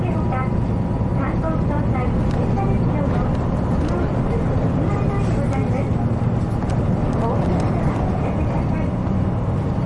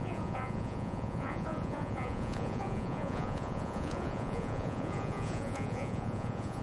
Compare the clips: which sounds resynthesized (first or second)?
second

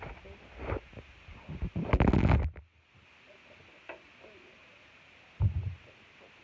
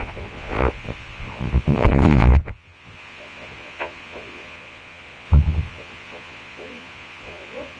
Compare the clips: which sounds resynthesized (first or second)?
second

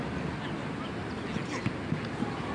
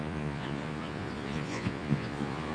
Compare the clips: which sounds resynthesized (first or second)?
second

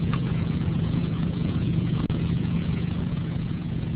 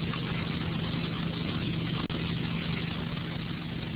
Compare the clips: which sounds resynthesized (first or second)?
first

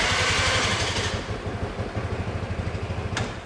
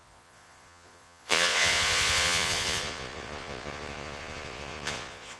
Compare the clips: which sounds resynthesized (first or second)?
second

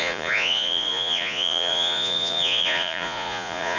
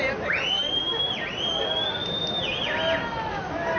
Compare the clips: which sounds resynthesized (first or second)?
first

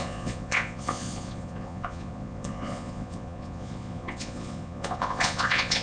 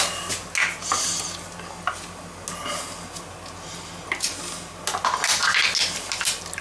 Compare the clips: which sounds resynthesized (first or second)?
first